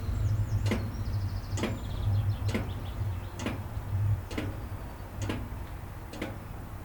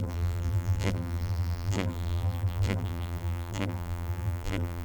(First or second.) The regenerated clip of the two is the second